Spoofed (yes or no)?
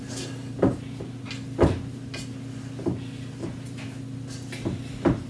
no